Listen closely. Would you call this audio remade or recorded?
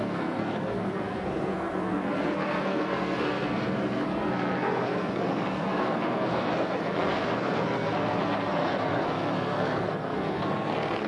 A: remade